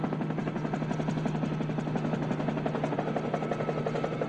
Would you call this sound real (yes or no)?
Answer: yes